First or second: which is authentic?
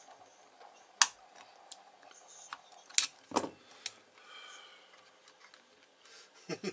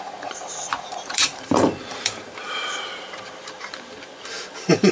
first